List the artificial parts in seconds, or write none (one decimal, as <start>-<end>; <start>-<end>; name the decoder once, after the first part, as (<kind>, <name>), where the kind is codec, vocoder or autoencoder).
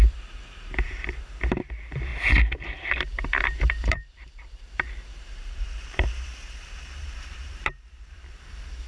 0.0-2.1 (vocoder, BigVGAN v2); 3.0-8.9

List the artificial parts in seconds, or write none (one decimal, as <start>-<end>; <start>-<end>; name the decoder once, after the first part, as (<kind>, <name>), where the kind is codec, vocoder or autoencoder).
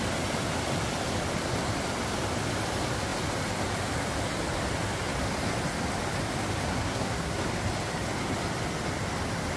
6.7-7.4 (codec, SNAC)